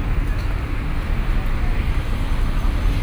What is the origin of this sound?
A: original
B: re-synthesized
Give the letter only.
A